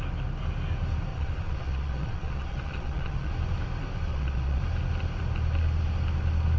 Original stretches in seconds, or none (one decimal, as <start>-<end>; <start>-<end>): 0.0-1.1; 3.3-4.1; 4.6-6.6